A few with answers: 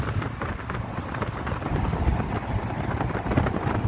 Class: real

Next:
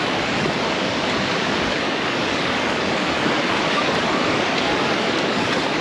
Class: fake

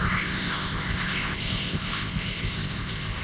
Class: fake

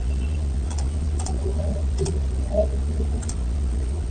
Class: fake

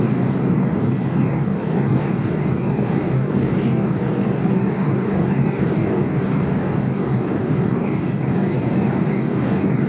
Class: fake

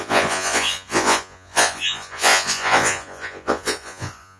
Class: fake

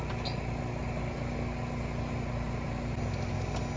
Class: real